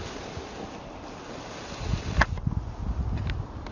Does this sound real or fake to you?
real